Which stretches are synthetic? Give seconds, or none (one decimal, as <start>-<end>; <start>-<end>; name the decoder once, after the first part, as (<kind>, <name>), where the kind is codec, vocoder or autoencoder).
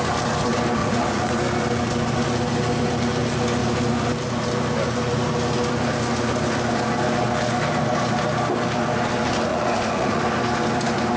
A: 0.8-1.3 (vocoder, Vocos); 9.5-10.2